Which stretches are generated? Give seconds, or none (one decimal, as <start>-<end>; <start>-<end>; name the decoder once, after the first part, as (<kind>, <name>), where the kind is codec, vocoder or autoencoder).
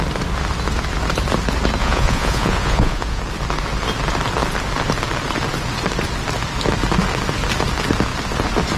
1.8-3.2 (vocoder, Vocos)